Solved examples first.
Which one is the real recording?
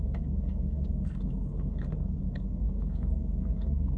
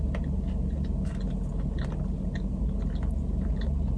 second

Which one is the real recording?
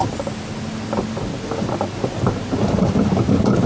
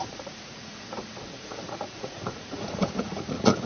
first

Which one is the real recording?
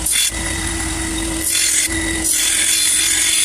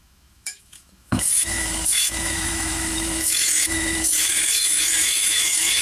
first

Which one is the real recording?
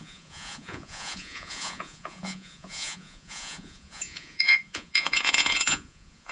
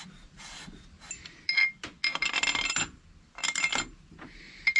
second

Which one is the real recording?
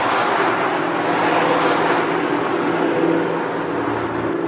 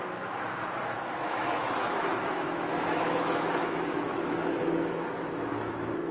first